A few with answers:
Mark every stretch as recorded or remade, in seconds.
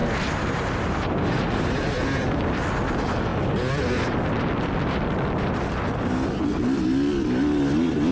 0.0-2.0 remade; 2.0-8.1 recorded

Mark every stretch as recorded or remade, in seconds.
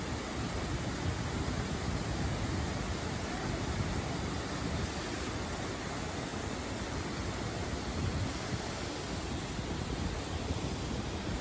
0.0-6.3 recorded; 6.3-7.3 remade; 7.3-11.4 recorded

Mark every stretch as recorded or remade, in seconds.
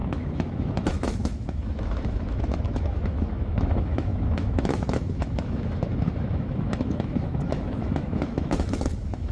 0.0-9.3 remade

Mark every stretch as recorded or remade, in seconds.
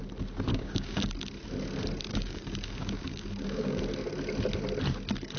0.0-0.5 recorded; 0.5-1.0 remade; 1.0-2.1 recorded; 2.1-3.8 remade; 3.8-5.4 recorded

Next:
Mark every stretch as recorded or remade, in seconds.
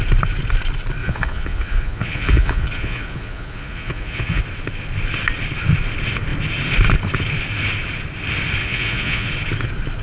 0.0-1.0 recorded; 1.0-4.4 remade; 4.4-8.6 recorded; 8.6-9.3 remade; 9.3-10.0 recorded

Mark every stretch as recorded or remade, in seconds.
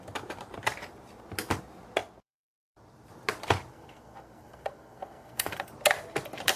0.0-3.7 recorded; 3.7-5.7 remade; 5.7-6.6 recorded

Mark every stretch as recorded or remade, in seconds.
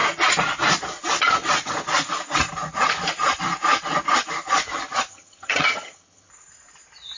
0.0-5.1 recorded; 5.1-6.3 remade; 6.3-7.2 recorded